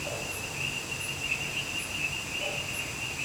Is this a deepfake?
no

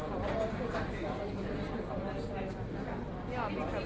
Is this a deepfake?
no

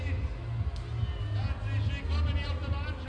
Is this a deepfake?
no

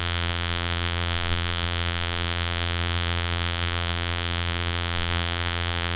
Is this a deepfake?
yes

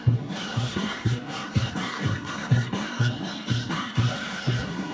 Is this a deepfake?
yes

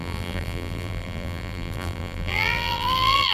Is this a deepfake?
yes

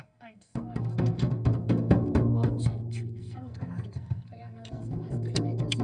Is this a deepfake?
yes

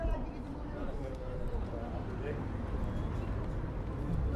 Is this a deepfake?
no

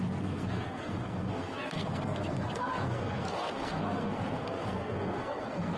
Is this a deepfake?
yes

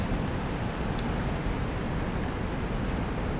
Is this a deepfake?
no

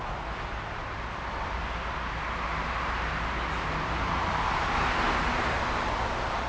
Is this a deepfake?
no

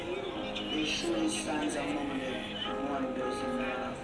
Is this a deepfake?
no